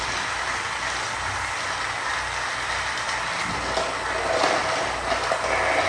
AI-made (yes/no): no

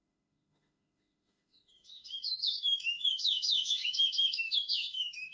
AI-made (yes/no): yes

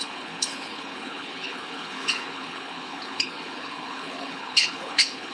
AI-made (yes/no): yes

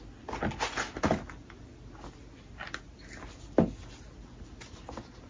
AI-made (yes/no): no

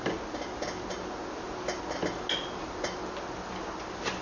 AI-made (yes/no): no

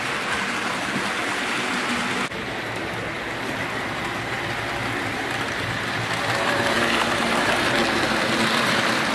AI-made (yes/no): no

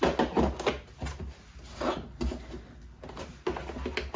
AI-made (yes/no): no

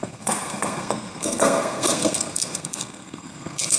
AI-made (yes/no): yes